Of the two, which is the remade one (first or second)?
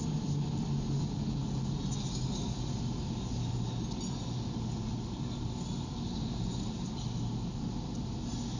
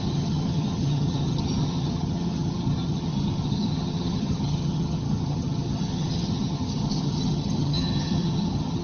second